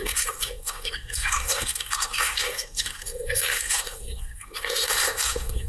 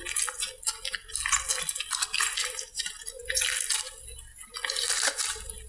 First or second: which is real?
second